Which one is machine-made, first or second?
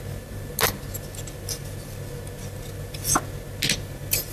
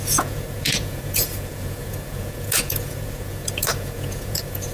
second